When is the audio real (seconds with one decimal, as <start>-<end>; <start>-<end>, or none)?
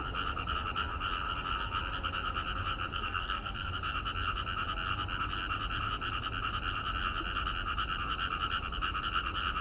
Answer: 0.0-2.9; 3.7-9.6